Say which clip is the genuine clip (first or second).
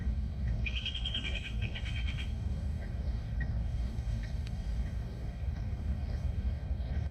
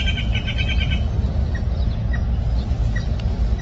second